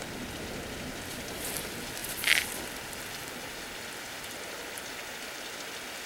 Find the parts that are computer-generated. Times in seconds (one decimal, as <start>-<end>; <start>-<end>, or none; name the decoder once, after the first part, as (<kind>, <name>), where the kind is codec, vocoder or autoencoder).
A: 2.0-5.0 (vocoder, BigVGAN v2)